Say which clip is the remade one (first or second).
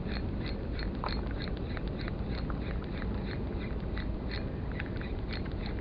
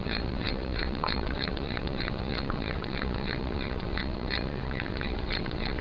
second